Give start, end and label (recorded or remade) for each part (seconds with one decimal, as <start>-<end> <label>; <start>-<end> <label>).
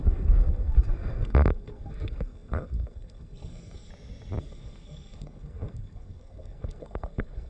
0.0-3.9 remade; 3.9-4.4 recorded; 4.4-7.5 remade